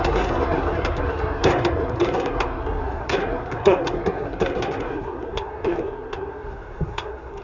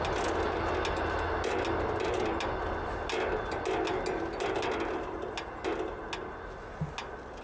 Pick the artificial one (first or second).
first